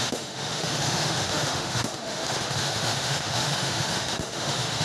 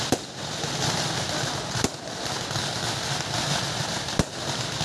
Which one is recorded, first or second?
second